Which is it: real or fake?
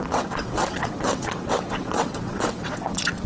fake